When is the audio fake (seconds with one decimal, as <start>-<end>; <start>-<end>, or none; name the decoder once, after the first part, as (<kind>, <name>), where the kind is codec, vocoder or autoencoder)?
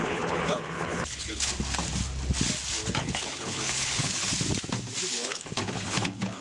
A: 0.0-1.5 (codec, HILCodec); 3.0-4.3; 5.1-6.4